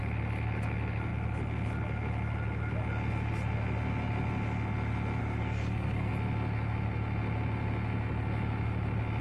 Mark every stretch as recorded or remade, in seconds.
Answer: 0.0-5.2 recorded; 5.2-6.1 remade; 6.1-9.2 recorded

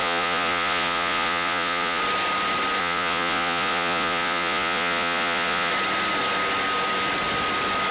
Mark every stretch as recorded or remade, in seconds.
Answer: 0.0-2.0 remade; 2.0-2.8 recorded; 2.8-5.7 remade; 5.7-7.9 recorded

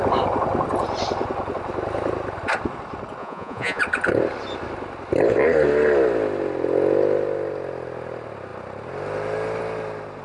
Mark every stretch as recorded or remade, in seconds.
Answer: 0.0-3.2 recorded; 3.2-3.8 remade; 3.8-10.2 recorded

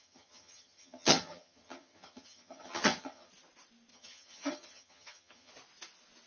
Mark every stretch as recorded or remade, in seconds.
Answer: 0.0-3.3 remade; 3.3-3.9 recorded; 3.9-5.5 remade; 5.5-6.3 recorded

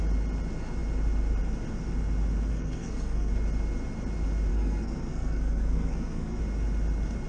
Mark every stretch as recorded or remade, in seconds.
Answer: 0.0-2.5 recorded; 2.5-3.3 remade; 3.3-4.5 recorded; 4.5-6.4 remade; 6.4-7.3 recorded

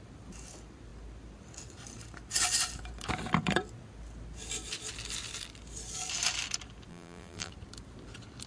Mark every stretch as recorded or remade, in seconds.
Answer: 0.0-6.9 recorded; 6.9-7.5 remade; 7.5-8.5 recorded

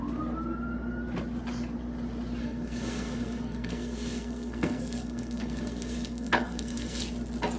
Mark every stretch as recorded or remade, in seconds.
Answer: 0.0-2.4 recorded; 2.4-7.0 remade; 7.0-7.6 recorded